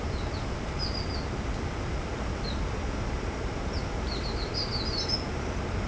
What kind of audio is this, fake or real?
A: real